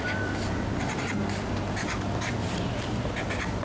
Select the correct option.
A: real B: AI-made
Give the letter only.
A